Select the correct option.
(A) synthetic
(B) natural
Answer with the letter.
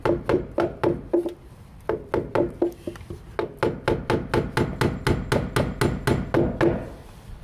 B